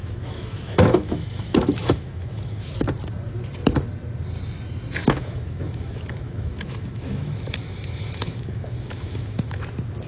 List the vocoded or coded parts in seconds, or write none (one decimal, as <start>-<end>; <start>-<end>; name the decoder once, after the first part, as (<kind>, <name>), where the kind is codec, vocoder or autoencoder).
0.0-2.7 (autoencoder, DAC-VAE); 5.0-9.6